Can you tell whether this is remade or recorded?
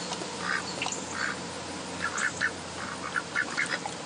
recorded